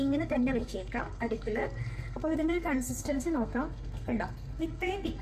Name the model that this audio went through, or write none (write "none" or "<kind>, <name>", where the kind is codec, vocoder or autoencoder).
codec, SNAC